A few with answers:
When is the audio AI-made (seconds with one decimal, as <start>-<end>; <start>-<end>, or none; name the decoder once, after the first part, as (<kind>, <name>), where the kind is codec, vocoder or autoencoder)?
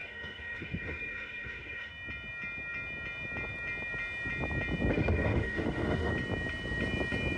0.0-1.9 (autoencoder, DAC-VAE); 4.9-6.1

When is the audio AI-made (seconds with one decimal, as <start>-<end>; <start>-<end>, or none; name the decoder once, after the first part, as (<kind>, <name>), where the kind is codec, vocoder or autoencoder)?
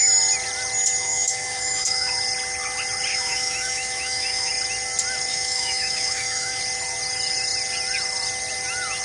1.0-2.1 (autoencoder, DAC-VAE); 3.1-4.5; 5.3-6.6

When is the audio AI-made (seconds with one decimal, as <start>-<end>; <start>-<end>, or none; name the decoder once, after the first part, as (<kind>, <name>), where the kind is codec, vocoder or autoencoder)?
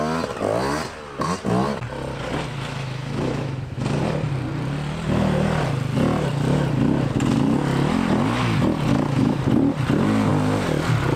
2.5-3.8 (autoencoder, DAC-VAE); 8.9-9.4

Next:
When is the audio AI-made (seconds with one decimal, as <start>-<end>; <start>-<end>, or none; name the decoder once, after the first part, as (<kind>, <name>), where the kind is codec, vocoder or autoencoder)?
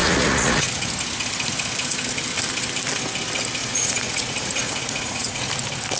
0.0-0.9 (vocoder, Vocos); 3.6-5.5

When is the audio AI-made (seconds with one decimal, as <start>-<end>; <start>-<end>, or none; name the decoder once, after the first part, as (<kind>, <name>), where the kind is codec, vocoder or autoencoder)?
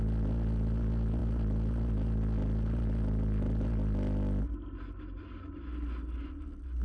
none